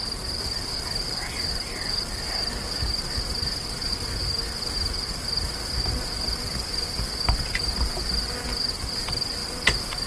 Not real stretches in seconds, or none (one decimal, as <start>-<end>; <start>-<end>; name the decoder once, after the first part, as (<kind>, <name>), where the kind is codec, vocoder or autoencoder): none